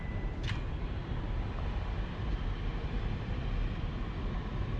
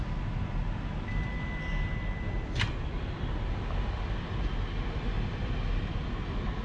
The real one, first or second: second